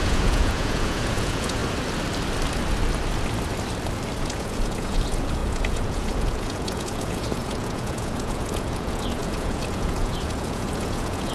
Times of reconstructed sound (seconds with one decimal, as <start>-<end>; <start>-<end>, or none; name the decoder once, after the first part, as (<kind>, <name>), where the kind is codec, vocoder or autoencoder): 0.0-1.6 (vocoder, Vocos); 4.2-11.3